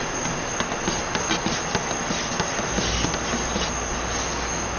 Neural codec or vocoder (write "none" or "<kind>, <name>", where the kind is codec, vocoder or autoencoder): none